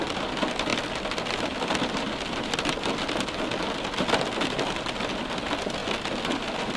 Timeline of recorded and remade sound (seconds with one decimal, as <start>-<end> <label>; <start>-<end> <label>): 0.0-0.7 recorded; 0.7-3.6 remade; 3.6-6.8 recorded